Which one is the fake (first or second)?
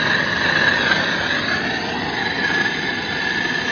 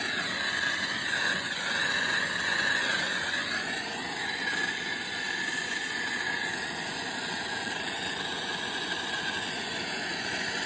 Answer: second